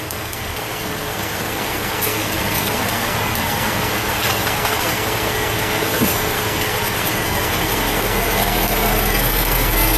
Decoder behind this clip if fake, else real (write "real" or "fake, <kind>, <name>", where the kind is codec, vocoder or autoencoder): fake, codec, SNAC